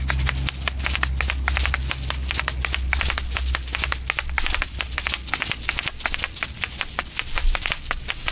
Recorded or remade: recorded